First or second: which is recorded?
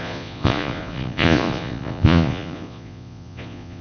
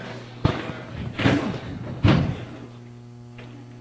second